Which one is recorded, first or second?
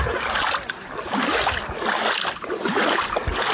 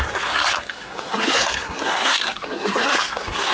first